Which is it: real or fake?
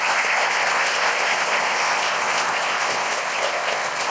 fake